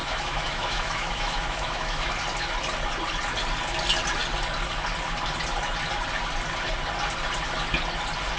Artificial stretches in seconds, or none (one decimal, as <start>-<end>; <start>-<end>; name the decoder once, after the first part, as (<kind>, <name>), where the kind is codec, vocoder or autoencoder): 0.0-2.1 (autoencoder, DAC-VAE)